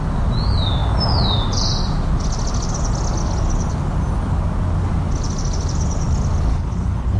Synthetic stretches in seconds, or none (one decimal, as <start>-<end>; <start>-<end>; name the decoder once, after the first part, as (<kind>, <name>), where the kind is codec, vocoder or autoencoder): 6.5-7.2 (codec, HILCodec)